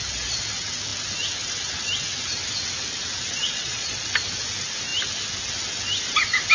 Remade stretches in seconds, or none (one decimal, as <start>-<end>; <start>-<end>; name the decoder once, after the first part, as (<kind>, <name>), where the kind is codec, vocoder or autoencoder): 3.4-4.0 (vocoder, Vocos)